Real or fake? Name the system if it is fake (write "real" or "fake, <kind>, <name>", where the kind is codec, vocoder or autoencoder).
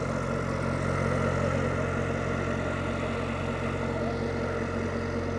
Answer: real